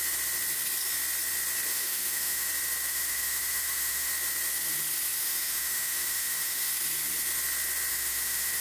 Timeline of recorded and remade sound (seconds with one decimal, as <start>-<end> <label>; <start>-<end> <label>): 0.0-1.7 recorded; 1.7-2.5 remade; 2.5-2.9 recorded; 2.9-4.1 remade; 4.1-5.2 recorded; 5.2-6.7 remade; 6.7-7.9 recorded; 7.9-8.6 remade